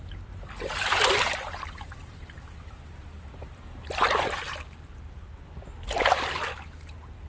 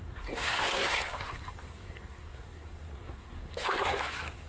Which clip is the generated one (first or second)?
second